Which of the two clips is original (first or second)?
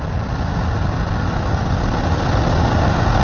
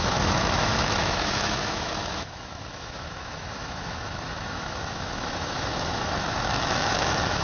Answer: first